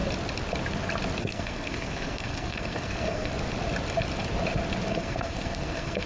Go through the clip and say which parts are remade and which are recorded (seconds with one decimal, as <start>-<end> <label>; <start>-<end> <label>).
0.0-1.2 recorded; 1.2-3.3 remade; 3.3-4.9 recorded; 4.9-6.1 remade